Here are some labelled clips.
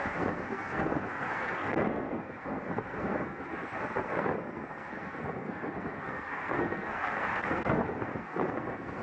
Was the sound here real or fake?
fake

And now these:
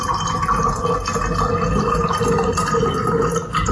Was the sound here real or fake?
real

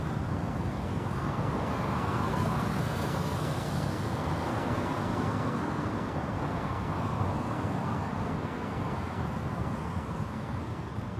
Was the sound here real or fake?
fake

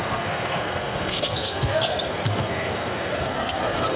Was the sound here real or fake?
fake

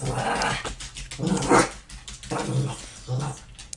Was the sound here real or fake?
real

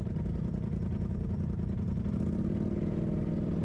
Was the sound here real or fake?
real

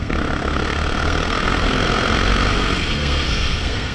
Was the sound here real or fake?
fake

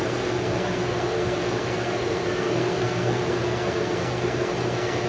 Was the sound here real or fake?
fake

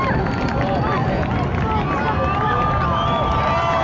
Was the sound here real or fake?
real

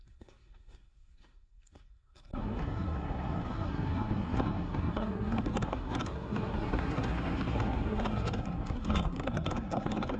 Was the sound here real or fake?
fake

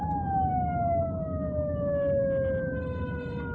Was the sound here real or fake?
real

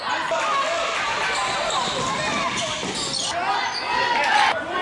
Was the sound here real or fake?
real